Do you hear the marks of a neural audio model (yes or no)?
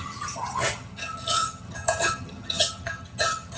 yes